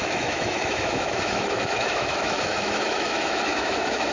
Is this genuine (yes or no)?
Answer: no